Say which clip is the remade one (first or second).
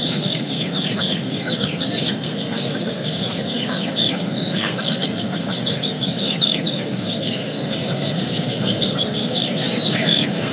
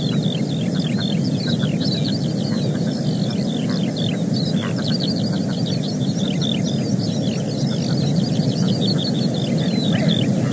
first